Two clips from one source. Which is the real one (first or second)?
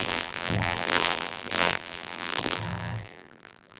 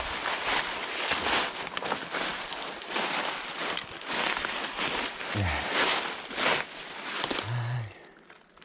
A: second